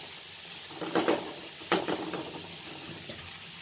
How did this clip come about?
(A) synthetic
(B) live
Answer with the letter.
B